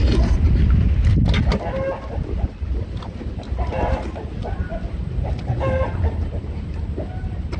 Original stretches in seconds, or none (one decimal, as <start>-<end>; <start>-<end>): 0.0-7.6